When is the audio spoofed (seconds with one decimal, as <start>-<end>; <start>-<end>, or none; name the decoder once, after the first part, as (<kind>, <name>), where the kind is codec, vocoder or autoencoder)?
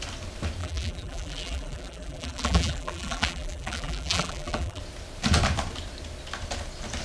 0.6-4.8 (vocoder, BigVGAN v2)